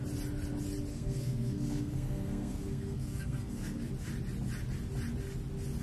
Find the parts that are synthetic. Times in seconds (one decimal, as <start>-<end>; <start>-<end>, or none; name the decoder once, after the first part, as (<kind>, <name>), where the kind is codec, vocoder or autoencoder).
0.9-3.9 (codec, SNAC)